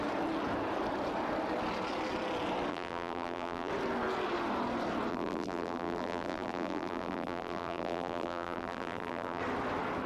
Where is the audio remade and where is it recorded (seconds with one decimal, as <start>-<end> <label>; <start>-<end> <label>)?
0.0-2.7 recorded; 2.7-3.7 remade; 3.7-5.1 recorded; 5.1-9.4 remade; 9.4-10.1 recorded